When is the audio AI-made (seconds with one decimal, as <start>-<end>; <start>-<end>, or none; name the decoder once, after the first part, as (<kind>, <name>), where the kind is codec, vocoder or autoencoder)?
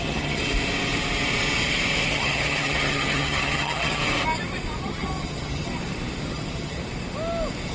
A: 0.0-0.4 (vocoder, HiFi-GAN); 2.1-4.0; 4.8-5.7; 6.2-6.8